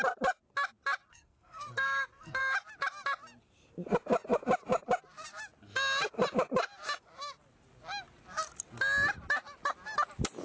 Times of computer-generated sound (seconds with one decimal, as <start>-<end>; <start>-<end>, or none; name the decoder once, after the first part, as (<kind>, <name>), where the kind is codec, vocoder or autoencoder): 1.1-2.4 (codec, SNAC)